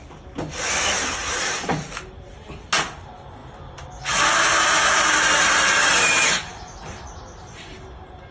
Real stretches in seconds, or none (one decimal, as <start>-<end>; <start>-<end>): 0.0-8.3